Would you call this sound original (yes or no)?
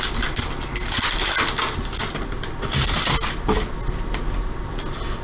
yes